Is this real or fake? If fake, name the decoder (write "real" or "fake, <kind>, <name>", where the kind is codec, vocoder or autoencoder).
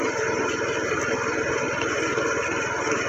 real